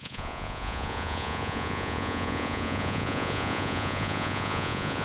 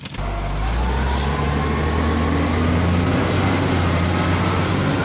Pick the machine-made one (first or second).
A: first